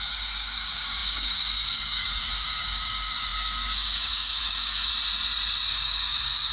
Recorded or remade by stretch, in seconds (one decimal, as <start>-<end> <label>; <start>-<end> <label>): 0.0-4.9 remade; 4.9-5.7 recorded; 5.7-6.5 remade